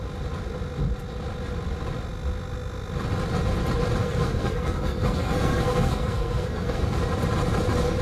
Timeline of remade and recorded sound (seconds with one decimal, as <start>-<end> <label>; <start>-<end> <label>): 0.0-4.0 recorded; 4.0-7.0 remade; 7.0-8.0 recorded